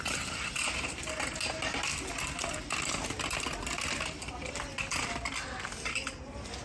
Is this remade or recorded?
recorded